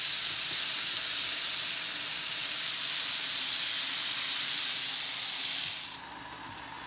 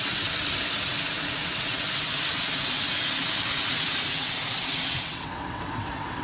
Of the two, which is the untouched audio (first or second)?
first